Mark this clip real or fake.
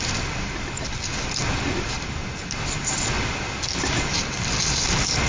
real